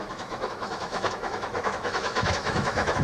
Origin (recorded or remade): remade